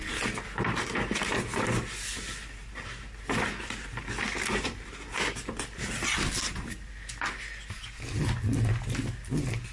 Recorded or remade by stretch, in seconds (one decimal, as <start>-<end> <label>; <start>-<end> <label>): 0.0-9.7 recorded